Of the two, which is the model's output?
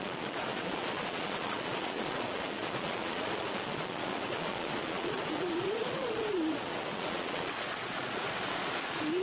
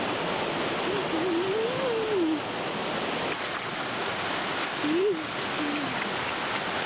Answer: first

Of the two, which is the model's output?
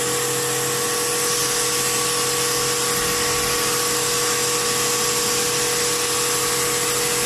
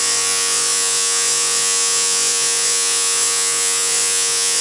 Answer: second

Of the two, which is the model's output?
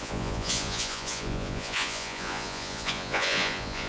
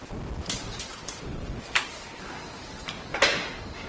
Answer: first